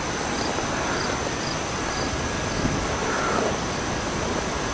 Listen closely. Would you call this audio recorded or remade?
recorded